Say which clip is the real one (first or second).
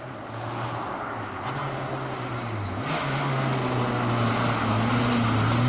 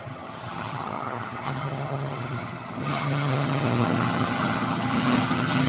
first